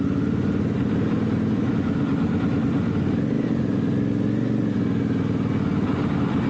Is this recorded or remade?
recorded